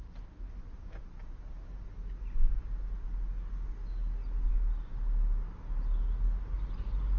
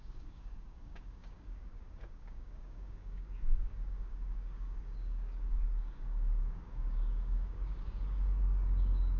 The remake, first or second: second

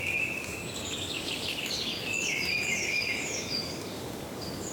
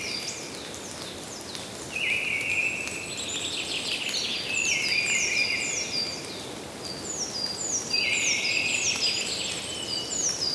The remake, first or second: first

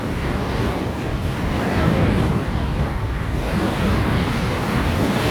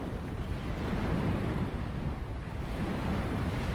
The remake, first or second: first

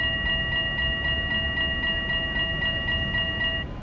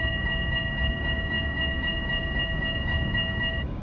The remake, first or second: second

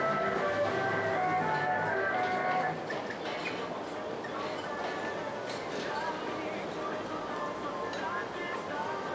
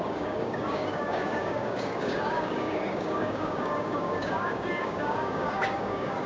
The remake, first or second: second